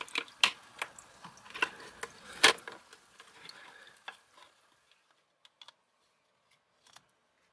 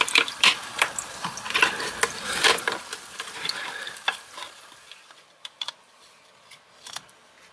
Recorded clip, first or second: first